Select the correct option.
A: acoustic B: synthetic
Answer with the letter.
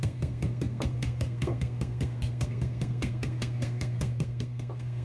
B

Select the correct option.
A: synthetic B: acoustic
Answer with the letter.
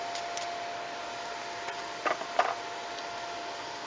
B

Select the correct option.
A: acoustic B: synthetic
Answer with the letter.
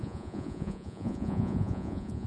B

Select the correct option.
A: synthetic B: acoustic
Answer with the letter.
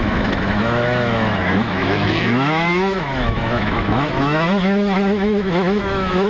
A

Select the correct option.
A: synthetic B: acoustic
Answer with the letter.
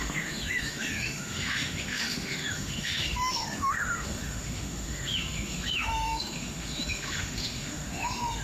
A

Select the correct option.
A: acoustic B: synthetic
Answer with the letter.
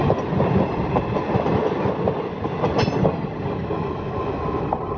A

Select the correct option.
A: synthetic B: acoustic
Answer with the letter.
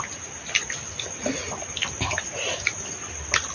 B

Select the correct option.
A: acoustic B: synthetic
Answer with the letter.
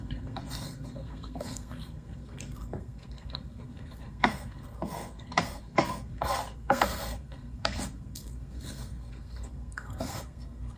B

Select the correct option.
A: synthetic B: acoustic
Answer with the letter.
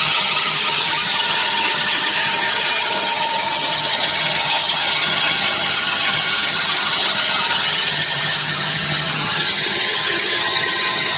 A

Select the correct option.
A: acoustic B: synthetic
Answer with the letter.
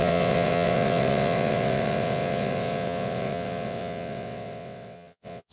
B